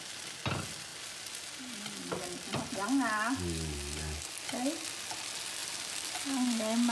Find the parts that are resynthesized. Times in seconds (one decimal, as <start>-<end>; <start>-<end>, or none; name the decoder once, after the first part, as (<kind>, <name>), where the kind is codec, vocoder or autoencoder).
none